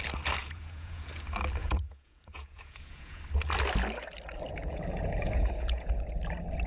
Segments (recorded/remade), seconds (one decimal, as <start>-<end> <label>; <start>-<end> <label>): 0.0-0.4 recorded; 0.4-1.0 remade; 1.0-1.6 recorded; 1.6-3.2 remade; 3.2-4.5 recorded; 4.5-5.9 remade; 5.9-6.7 recorded